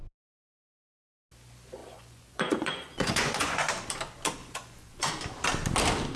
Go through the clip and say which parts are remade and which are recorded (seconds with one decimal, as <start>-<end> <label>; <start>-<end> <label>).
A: 0.0-1.8 recorded; 1.8-3.7 remade; 3.7-4.4 recorded; 4.4-5.1 remade; 5.1-6.2 recorded